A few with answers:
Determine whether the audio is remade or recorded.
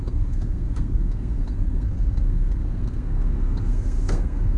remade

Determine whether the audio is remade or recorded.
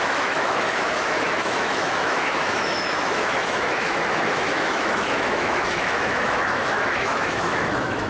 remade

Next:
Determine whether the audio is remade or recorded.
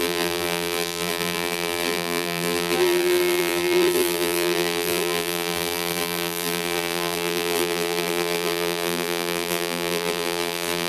remade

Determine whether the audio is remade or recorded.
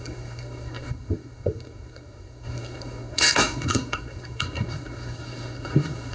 remade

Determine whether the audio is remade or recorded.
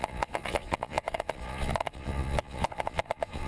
remade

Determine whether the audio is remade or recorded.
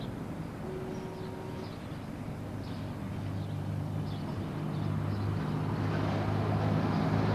recorded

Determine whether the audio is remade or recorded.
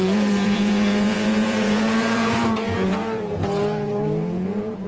remade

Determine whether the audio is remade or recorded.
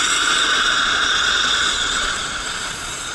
remade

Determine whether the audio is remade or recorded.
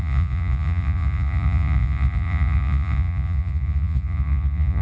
remade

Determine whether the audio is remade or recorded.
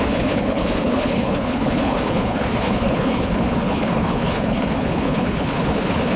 remade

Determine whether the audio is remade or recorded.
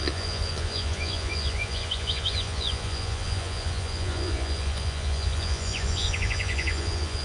remade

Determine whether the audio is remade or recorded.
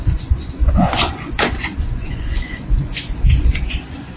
remade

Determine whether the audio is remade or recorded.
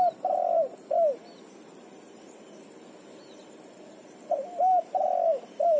recorded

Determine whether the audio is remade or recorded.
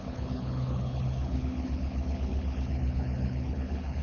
remade